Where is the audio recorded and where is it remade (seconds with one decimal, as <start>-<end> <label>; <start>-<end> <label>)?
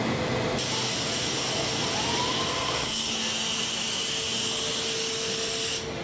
0.0-2.5 recorded; 2.5-3.1 remade; 3.1-6.0 recorded